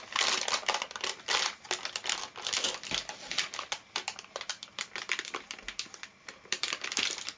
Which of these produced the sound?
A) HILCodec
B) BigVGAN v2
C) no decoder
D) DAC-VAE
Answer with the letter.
B